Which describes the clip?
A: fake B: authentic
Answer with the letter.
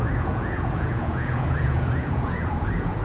A